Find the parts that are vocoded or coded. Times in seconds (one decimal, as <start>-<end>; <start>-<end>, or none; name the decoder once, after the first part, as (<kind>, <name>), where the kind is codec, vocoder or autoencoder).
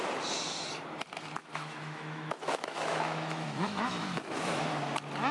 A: 1.4-4.6 (autoencoder, DAC-VAE)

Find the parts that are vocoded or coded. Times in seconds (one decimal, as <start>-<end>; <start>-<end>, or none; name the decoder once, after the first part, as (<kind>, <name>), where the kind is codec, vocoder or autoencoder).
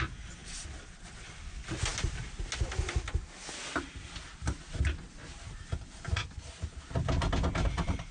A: none